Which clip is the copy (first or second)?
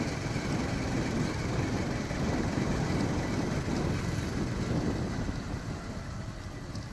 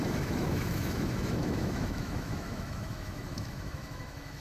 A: second